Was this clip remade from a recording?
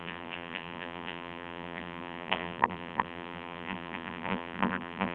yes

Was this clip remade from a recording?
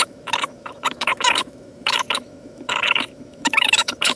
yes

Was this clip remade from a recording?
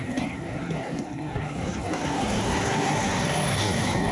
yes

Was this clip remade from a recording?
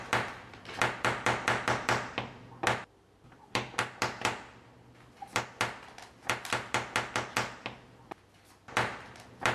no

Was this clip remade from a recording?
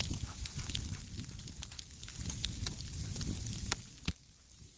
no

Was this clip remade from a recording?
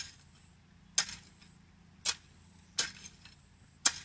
no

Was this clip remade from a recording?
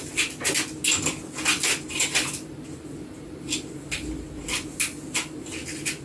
no